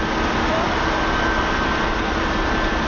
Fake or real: real